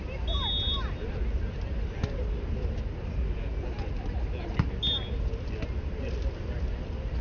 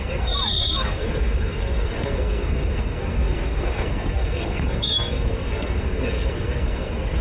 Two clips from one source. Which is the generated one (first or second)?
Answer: second